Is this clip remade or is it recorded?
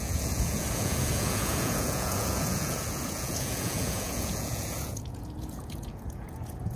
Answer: remade